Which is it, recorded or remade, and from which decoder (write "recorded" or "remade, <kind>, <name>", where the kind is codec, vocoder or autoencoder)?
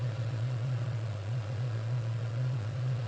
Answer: remade, vocoder, Vocos